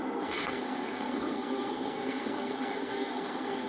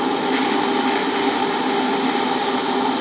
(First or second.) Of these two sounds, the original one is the second